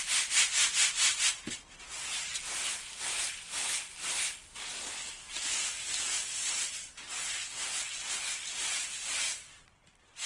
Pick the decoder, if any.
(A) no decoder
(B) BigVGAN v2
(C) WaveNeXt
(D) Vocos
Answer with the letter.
A